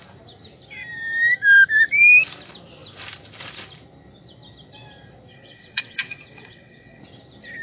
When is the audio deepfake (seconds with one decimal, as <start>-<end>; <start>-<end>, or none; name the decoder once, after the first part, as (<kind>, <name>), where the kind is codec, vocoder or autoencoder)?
5.3-7.0 (vocoder, WaveNeXt)

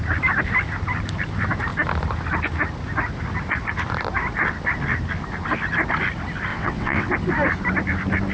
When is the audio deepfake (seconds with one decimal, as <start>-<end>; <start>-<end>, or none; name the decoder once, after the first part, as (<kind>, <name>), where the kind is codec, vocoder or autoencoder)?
6.5-7.1 (vocoder, WaveNeXt)

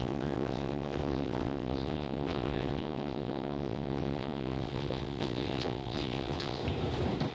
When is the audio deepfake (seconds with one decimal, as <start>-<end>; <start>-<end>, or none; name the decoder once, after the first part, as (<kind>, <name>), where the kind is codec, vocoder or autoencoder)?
0.0-6.6 (vocoder, WaveNeXt)

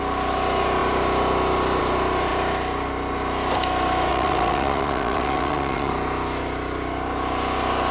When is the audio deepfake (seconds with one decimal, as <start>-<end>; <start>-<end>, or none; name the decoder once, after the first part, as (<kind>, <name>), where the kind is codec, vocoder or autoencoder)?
4.1-5.9 (vocoder, WaveNeXt)